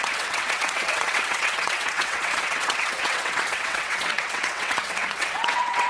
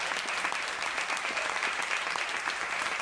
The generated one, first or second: first